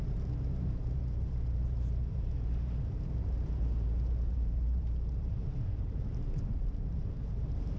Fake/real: fake